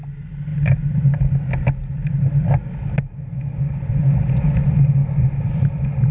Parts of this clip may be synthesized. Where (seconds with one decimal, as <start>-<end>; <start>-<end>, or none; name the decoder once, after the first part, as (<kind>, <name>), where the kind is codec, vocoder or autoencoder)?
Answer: 0.5-1.1 (vocoder, BigVGAN v2); 5.0-5.6